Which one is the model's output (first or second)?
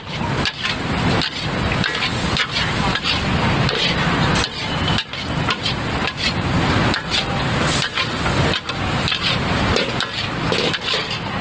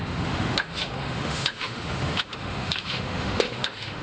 second